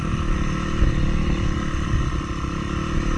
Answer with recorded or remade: recorded